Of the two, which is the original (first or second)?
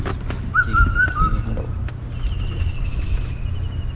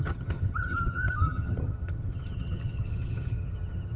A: first